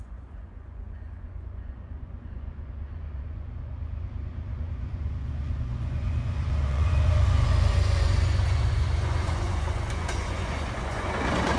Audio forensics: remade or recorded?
remade